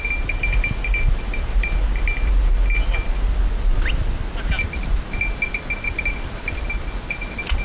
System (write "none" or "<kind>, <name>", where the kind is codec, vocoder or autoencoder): none